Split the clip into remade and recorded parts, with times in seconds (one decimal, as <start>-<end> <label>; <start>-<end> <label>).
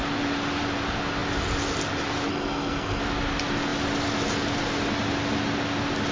0.0-2.3 recorded; 2.3-3.0 remade; 3.0-6.1 recorded